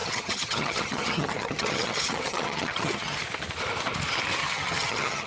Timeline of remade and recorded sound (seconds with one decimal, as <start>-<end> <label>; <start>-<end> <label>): 0.0-3.2 remade; 3.2-4.4 recorded; 4.4-5.3 remade